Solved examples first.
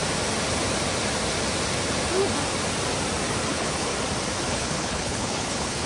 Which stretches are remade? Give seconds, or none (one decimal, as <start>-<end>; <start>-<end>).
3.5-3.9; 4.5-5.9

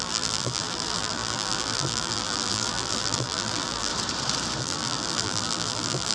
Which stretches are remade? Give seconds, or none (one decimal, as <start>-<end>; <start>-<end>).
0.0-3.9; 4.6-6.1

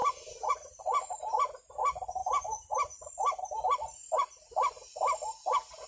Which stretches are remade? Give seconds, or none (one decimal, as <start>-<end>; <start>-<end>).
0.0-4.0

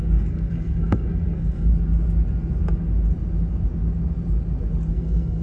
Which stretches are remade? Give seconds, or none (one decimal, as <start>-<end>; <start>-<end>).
0.0-1.7; 4.9-5.4

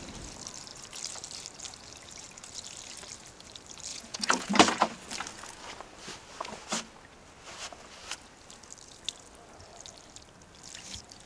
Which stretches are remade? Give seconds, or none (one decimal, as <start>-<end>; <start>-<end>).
3.9-4.5